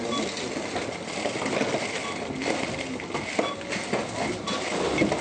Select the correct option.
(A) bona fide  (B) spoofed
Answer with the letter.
A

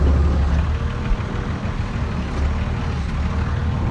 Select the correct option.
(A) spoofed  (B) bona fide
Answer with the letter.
B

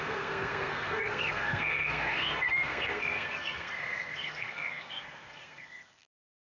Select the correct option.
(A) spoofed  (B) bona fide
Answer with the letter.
A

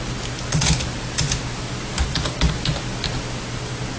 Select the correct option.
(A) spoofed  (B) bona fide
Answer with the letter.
B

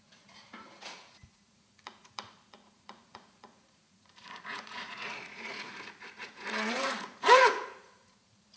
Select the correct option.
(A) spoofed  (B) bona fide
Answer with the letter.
A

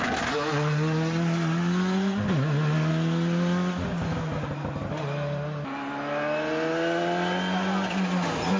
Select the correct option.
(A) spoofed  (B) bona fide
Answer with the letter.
B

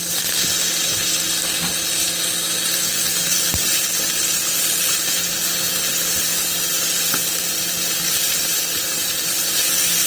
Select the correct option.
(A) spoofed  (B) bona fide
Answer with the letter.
B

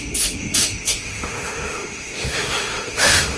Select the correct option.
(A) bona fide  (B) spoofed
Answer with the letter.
B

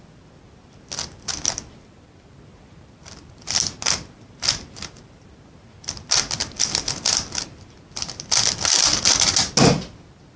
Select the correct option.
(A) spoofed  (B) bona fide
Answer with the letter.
B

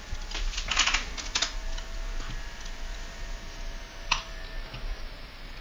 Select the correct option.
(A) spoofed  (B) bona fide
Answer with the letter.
B